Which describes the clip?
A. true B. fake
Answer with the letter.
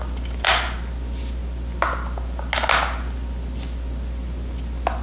A